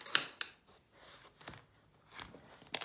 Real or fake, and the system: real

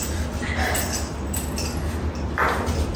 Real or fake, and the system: real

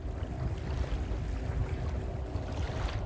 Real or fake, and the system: real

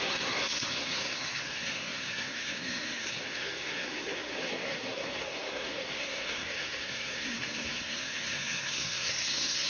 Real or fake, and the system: fake, codec, SNAC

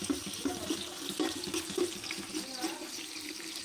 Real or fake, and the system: real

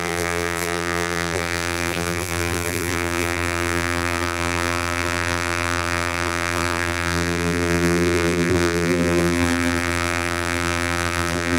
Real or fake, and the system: fake, vocoder, BigVGAN v2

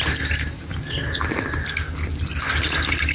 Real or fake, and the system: real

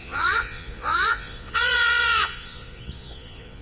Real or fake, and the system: fake, vocoder, Vocos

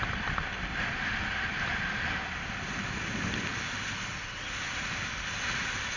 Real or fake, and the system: real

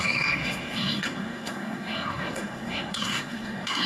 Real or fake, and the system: fake, codec, SNAC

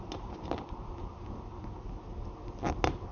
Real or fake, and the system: real